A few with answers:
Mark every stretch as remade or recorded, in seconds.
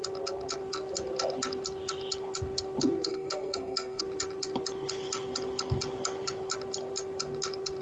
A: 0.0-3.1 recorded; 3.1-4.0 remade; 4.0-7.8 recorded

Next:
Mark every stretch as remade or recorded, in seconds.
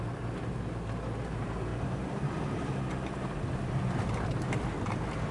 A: 0.0-5.3 recorded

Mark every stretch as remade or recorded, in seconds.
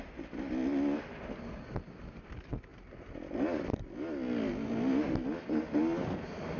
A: 0.0-6.6 recorded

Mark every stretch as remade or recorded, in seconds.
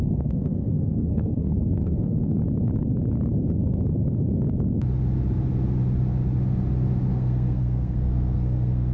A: 0.0-2.4 remade; 2.4-7.1 recorded; 7.1-8.9 remade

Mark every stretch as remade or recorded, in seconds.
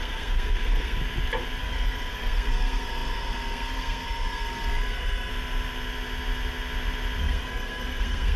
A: 0.0-1.0 remade; 1.0-1.6 recorded; 1.6-5.3 remade; 5.3-7.2 recorded; 7.2-8.4 remade